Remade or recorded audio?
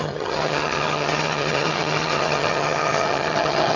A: remade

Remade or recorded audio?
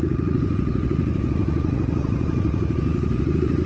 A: remade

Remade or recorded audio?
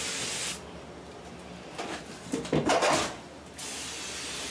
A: recorded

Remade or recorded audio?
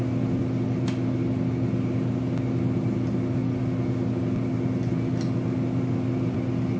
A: recorded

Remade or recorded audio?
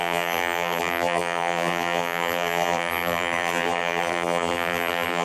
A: remade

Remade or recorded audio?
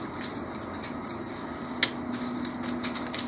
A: recorded